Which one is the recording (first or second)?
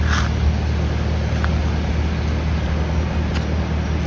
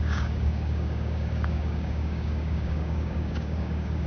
first